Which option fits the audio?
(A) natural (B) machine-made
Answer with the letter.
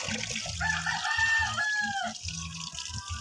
A